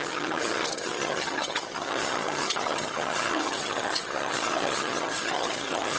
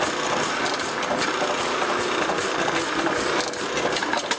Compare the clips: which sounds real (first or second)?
second